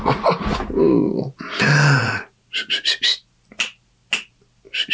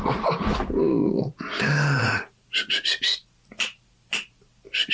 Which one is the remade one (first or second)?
second